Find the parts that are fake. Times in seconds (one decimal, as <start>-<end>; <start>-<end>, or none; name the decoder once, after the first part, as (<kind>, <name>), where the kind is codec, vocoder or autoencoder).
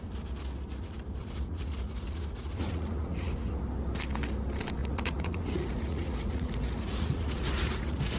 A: 1.2-3.6 (vocoder, Vocos); 4.8-8.2